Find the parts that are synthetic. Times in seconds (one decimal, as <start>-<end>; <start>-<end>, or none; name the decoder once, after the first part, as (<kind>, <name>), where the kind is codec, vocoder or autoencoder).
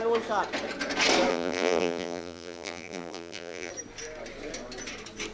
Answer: 1.3-3.7 (vocoder, BigVGAN v2)